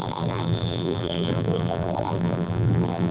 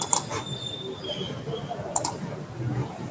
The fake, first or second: first